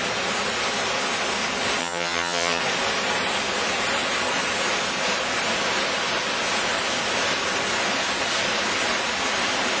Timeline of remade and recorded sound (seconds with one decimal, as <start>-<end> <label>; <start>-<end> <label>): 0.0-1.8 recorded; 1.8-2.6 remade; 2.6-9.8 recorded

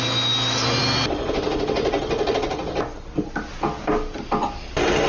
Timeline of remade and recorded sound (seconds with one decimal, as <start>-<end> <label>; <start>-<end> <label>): 0.0-5.1 recorded

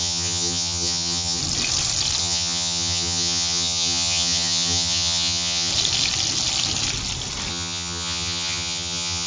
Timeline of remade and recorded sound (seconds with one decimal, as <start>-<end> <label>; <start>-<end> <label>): 0.0-1.4 remade; 1.4-2.2 recorded; 2.2-5.7 remade; 5.7-7.5 recorded; 7.5-9.3 remade

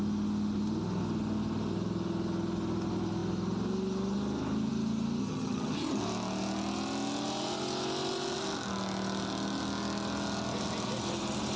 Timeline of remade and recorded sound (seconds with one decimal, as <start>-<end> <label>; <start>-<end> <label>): 0.0-5.2 recorded; 5.2-6.0 remade; 6.0-11.6 recorded